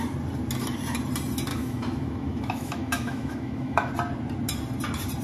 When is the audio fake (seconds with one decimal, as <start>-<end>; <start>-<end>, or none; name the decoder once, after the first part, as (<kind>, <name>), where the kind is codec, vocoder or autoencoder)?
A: 1.5-3.9 (autoencoder, DAC-VAE)